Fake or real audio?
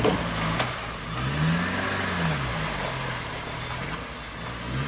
real